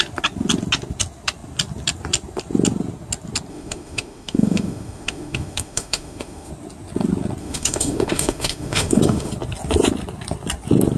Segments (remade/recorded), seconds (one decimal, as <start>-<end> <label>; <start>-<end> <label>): 0.0-3.5 recorded; 3.5-6.5 remade; 6.5-7.4 recorded; 7.4-9.3 remade; 9.3-11.0 recorded